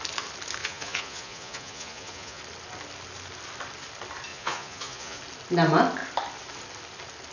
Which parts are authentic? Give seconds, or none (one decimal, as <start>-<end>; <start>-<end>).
0.0-0.6; 2.4-4.3; 5.2-7.3